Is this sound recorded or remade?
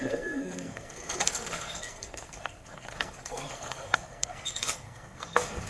remade